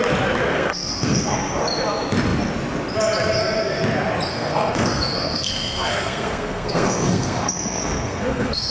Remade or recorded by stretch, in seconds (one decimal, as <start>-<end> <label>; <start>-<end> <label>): 0.0-0.5 recorded; 0.5-1.6 remade; 1.6-4.3 recorded; 4.3-8.7 remade